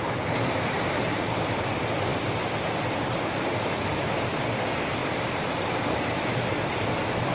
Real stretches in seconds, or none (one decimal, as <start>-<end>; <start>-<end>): 2.1-3.0